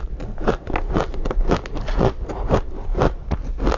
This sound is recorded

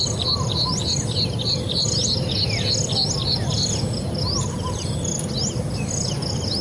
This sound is recorded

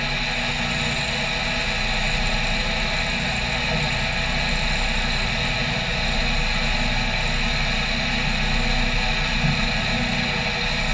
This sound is recorded